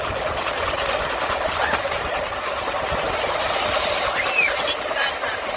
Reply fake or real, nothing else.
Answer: real